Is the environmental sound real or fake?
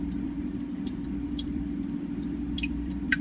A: fake